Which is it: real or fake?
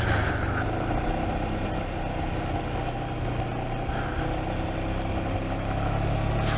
real